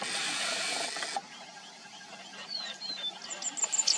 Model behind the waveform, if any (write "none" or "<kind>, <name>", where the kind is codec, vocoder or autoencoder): none